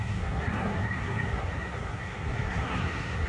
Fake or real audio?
fake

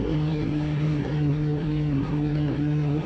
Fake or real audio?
fake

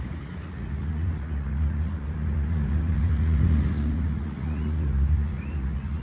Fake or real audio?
fake